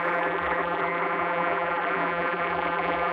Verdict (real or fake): fake